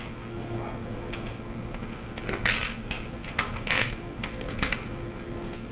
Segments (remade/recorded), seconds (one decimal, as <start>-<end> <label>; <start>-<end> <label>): 0.0-5.7 remade